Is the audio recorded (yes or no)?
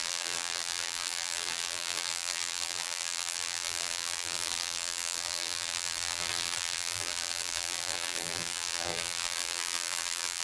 no